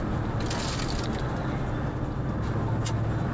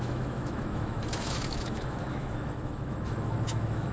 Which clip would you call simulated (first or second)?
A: second